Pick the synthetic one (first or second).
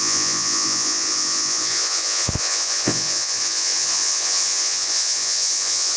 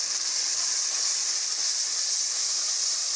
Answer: first